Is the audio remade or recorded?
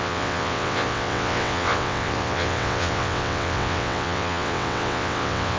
remade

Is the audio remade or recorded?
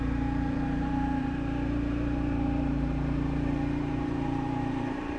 remade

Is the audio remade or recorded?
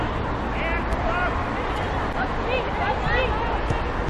recorded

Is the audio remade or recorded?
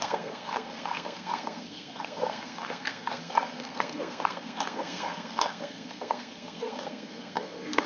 remade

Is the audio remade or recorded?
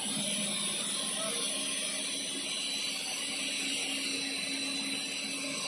recorded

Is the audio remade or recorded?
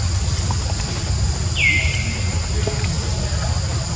recorded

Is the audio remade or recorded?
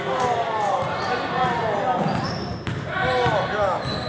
recorded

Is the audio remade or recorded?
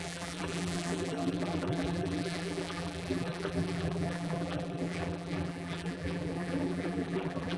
remade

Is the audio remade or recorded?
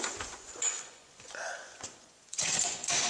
remade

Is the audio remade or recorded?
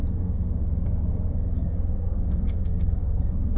remade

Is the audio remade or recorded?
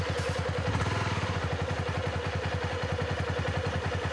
recorded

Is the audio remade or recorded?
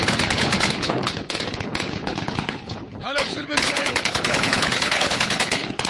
remade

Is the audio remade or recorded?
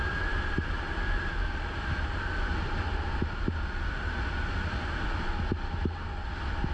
recorded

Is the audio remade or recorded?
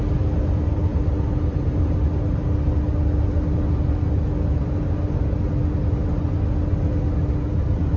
recorded